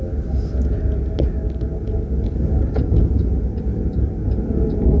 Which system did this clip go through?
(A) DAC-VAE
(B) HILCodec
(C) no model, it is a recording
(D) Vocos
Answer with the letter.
C